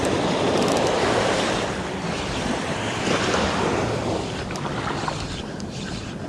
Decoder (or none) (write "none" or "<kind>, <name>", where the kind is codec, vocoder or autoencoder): vocoder, BigVGAN v2